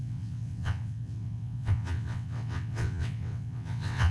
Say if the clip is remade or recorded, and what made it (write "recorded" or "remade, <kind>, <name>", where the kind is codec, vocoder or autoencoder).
remade, vocoder, WaveNeXt